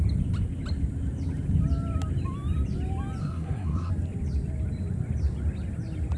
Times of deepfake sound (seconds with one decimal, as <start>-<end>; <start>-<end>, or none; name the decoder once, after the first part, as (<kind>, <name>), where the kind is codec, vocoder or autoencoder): 3.2-3.9 (codec, SNAC)